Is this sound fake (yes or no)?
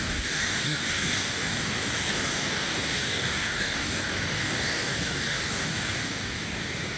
yes